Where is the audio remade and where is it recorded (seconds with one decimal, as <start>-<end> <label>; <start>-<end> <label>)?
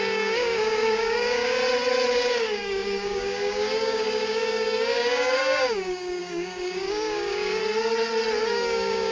0.0-1.6 remade; 1.6-2.1 recorded; 2.1-7.6 remade; 7.6-8.5 recorded; 8.5-9.1 remade